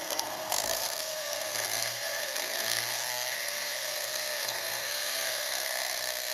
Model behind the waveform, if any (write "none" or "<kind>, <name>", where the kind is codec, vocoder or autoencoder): codec, SNAC